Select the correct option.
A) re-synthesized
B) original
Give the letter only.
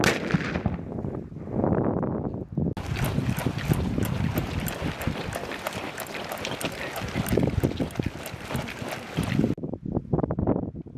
B